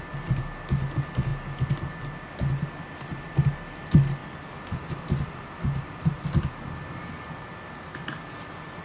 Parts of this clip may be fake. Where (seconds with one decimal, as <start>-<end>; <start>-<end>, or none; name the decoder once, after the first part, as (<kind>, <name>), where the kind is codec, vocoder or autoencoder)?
none